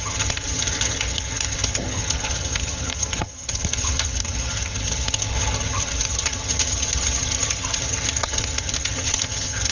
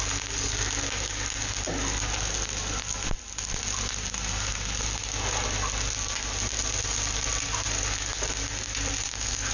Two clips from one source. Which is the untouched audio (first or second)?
second